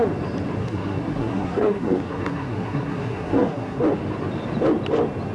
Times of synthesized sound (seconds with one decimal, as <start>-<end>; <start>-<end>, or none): 0.6-3.8